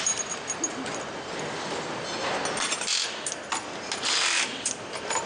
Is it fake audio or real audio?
real